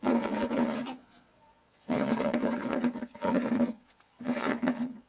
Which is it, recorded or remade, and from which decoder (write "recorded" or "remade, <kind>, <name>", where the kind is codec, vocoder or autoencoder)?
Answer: remade, vocoder, Vocos